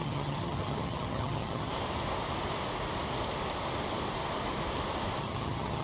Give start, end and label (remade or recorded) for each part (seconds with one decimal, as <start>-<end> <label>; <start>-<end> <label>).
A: 0.0-1.7 remade; 1.7-5.2 recorded; 5.2-5.8 remade